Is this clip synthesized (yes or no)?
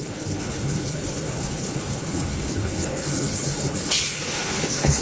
yes